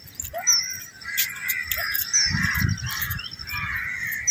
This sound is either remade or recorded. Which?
recorded